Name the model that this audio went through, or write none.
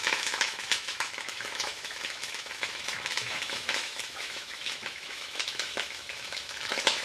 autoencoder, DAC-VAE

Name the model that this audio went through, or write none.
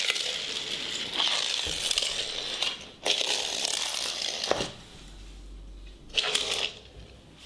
none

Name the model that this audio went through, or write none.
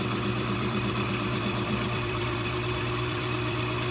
vocoder, BigVGAN v2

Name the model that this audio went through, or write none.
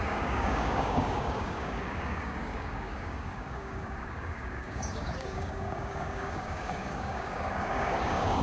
codec, DAC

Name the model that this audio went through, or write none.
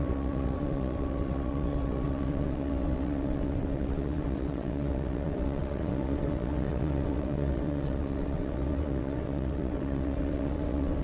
vocoder, WaveNeXt